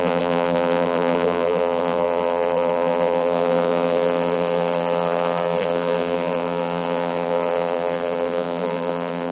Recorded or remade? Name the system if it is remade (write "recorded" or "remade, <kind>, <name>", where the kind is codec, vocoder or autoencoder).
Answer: remade, vocoder, BigVGAN v2